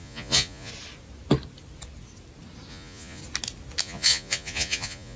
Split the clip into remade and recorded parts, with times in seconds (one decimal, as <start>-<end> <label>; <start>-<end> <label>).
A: 0.0-0.7 remade; 0.7-2.7 recorded; 2.7-3.2 remade; 3.2-3.8 recorded; 3.8-5.2 remade